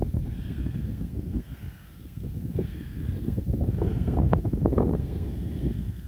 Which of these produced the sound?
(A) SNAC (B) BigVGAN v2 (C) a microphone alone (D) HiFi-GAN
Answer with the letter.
A